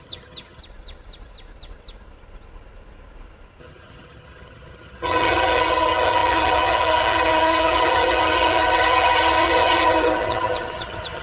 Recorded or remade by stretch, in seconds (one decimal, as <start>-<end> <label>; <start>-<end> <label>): 0.0-0.6 remade; 0.6-3.6 recorded; 3.6-11.2 remade